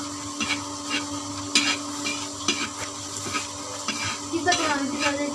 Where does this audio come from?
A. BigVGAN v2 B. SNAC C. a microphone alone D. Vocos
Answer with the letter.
C